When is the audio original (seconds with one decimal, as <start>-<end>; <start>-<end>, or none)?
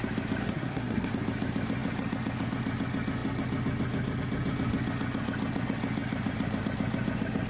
0.0-0.4; 1.1-7.5